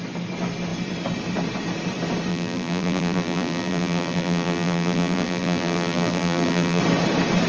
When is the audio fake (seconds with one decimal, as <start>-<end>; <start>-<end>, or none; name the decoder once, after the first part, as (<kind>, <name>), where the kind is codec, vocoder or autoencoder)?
2.3-6.8 (vocoder, BigVGAN v2)